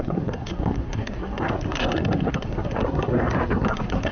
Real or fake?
fake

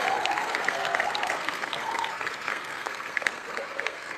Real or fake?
fake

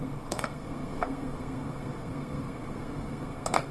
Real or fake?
fake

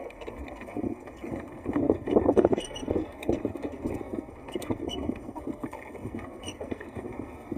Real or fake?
fake